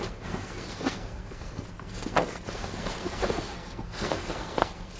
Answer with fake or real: fake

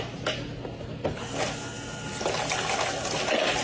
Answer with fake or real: real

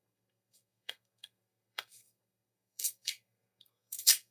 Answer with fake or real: fake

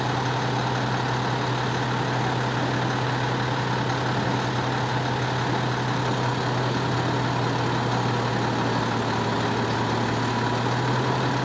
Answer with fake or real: real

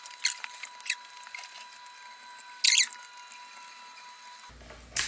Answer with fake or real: real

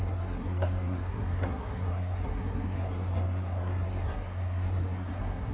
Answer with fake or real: fake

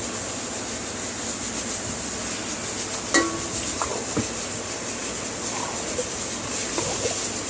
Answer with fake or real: real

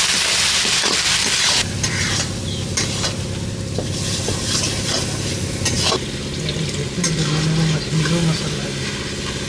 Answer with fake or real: real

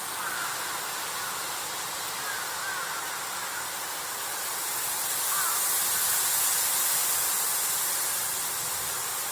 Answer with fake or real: real